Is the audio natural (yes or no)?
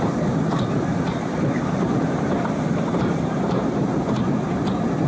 no